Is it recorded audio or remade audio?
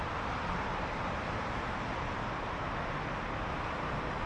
recorded